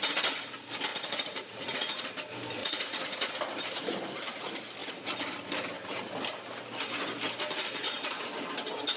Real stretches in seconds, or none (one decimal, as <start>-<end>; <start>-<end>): 0.0-0.9; 2.0-2.6; 3.3-9.0